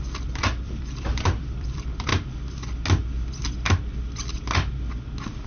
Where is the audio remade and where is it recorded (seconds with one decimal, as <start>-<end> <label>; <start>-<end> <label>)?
0.0-2.1 remade; 2.1-5.5 recorded